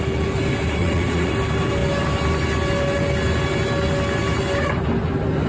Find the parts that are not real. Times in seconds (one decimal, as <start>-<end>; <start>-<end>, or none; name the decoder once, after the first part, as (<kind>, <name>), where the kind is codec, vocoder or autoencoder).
0.8-1.3 (vocoder, Vocos)